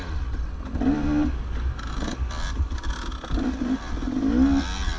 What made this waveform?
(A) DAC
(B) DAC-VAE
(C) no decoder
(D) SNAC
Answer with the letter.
C